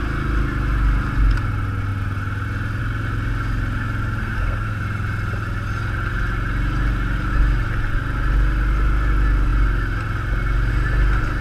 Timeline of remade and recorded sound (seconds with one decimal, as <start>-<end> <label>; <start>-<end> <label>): 0.0-4.2 recorded; 4.2-4.8 remade; 4.8-11.4 recorded